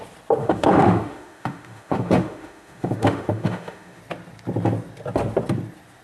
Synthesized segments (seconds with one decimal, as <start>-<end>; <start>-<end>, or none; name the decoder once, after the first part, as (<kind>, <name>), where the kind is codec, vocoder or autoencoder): 0.4-4.0 (autoencoder, DAC-VAE)